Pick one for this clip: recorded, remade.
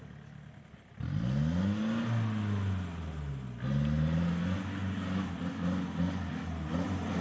recorded